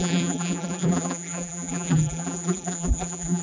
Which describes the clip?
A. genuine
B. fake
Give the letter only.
B